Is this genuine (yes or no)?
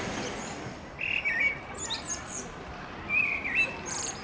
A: no